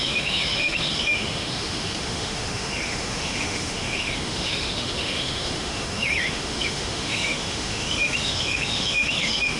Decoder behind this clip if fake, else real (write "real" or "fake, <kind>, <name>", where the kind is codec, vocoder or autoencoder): fake, autoencoder, DAC-VAE